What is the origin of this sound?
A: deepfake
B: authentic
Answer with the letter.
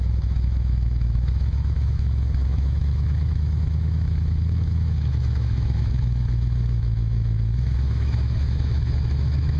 A